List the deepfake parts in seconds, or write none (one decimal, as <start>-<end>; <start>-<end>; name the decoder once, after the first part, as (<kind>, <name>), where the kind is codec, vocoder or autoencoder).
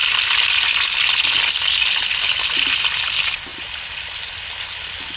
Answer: none